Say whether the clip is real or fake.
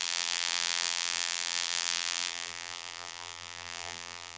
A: fake